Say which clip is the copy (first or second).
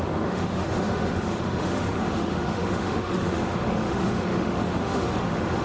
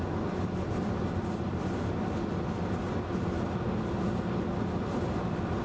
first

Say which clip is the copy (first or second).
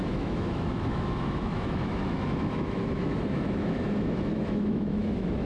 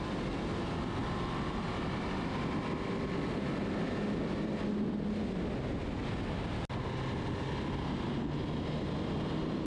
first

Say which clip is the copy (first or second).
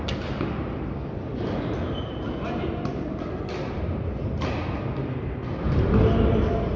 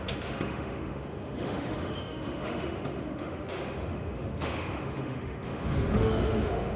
second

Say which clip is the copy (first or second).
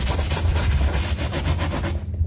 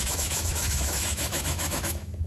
second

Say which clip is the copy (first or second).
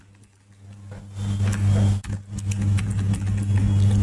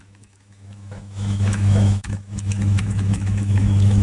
second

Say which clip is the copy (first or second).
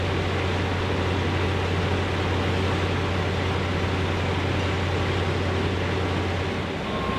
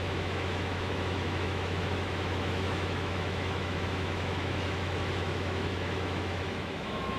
second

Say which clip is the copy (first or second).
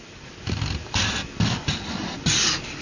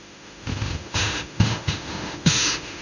second